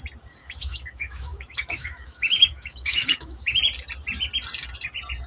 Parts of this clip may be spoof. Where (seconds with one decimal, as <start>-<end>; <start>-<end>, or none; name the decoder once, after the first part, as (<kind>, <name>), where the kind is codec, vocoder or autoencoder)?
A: 0.4-3.6 (autoencoder, DAC-VAE)